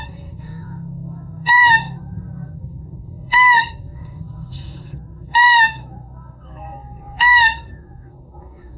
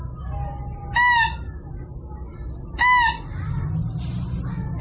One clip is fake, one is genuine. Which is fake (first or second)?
first